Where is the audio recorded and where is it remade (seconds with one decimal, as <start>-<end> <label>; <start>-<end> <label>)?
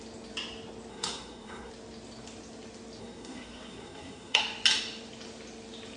0.0-0.9 recorded; 0.9-1.7 remade; 1.7-3.0 recorded; 3.0-4.4 remade; 4.4-6.0 recorded